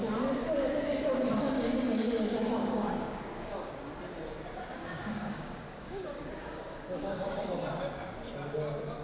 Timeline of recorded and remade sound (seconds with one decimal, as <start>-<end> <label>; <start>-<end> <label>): 0.0-0.4 recorded; 0.4-3.7 remade; 3.7-4.8 recorded; 4.8-7.5 remade; 7.5-9.0 recorded